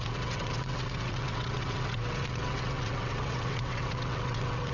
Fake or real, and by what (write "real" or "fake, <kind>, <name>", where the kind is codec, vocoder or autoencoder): fake, vocoder, WaveNeXt